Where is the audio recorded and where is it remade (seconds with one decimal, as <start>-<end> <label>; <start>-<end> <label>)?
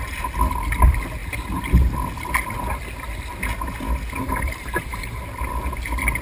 0.0-4.2 recorded; 4.2-5.2 remade; 5.2-6.2 recorded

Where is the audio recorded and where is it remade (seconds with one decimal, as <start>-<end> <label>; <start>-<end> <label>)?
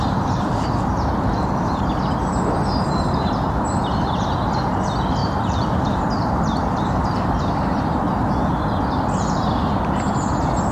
0.0-5.2 recorded; 5.2-6.0 remade; 6.0-10.7 recorded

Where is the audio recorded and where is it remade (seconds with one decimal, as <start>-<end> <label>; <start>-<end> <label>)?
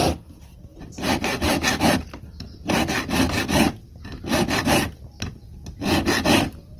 0.0-0.7 recorded; 0.7-4.6 remade; 4.6-6.8 recorded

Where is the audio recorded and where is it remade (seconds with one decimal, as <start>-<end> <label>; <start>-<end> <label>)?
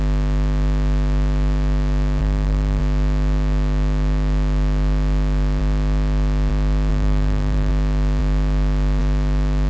0.0-2.2 recorded; 2.2-2.8 remade; 2.8-6.9 recorded; 6.9-7.7 remade; 7.7-9.7 recorded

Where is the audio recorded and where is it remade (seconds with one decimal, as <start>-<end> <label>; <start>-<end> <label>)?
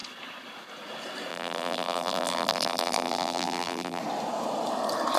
0.0-1.3 recorded; 1.3-4.0 remade; 4.0-5.2 recorded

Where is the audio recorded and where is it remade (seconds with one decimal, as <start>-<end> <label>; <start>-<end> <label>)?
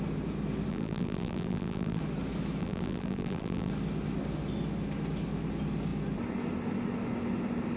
0.0-0.7 recorded; 0.7-2.0 remade; 2.0-2.6 recorded; 2.6-3.7 remade; 3.7-7.8 recorded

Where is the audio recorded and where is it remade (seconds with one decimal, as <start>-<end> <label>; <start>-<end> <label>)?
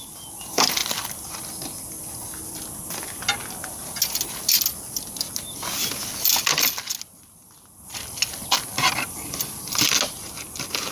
0.0-8.7 recorded; 8.7-9.9 remade; 9.9-10.9 recorded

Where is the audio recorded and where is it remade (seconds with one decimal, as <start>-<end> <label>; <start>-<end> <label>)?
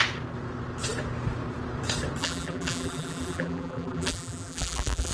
0.0-2.2 recorded; 2.2-5.1 remade